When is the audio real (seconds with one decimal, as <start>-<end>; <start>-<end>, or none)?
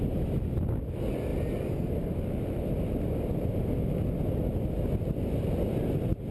0.0-6.3